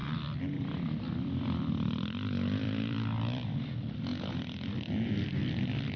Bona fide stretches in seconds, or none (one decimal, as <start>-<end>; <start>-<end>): 4.1-6.0